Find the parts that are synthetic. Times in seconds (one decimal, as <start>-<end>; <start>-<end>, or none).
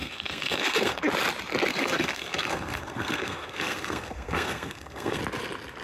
0.0-1.0; 1.7-5.2